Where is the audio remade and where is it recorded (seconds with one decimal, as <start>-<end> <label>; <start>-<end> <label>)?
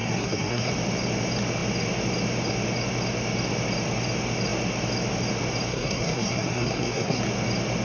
0.0-0.7 remade; 0.7-5.7 recorded; 5.7-7.2 remade; 7.2-7.8 recorded